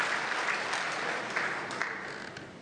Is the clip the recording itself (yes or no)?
yes